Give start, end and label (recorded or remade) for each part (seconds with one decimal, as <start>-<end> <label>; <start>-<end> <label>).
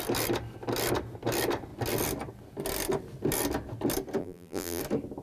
0.0-4.2 recorded; 4.2-4.8 remade; 4.8-5.2 recorded